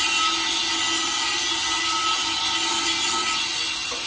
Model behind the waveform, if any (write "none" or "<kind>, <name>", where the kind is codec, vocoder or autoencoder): none